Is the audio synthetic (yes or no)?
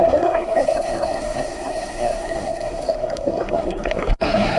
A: yes